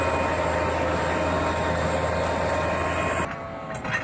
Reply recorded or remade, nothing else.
recorded